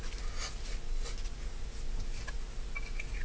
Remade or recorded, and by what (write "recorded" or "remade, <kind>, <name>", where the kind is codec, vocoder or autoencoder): recorded